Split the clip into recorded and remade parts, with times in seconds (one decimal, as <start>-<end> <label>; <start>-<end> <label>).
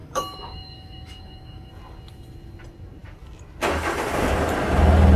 0.0-1.7 remade; 1.7-5.2 recorded